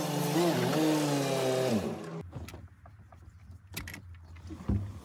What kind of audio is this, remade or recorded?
recorded